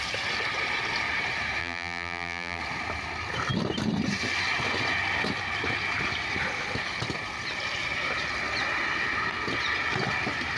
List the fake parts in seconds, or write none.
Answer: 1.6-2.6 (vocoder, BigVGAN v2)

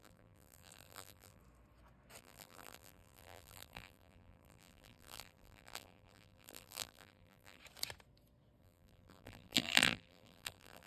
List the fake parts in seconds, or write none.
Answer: 0.0-1.4 (vocoder, BigVGAN v2); 2.2-7.6; 8.6-10.9

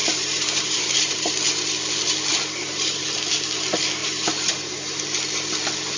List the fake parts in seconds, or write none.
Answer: 0.0-1.4 (vocoder, BigVGAN v2); 2.3-3.0; 4.0-5.0

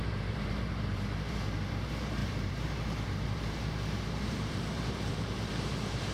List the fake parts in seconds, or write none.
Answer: 0.0-6.1 (vocoder, BigVGAN v2)

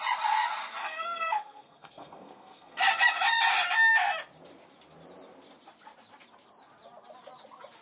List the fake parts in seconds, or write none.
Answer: 0.8-2.9 (codec, SNAC)

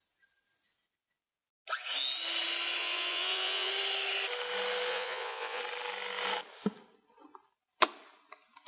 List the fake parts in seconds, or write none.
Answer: 2.8-3.7 (vocoder, Vocos); 4.9-5.6

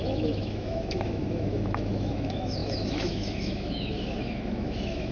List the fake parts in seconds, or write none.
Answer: 0.0-5.1 (autoencoder, DAC-VAE)